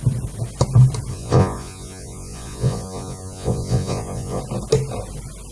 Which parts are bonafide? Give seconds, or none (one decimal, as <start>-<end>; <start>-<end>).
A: 0.0-1.1; 4.4-5.5